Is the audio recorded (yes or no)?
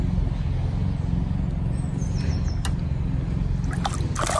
yes